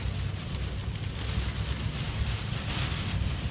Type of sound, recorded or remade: recorded